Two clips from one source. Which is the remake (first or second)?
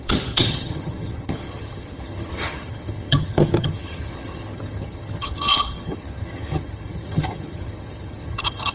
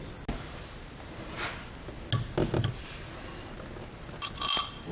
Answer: first